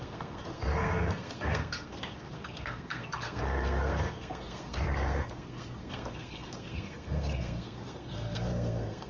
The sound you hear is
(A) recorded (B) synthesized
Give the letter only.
B